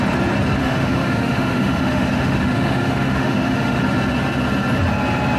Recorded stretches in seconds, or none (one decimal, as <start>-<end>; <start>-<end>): 0.0-0.6; 3.8-5.4